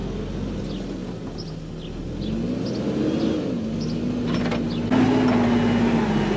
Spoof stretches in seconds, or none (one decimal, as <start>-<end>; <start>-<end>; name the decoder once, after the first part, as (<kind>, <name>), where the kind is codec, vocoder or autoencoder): none